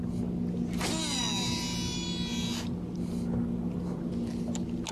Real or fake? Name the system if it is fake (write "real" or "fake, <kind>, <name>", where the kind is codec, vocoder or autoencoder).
real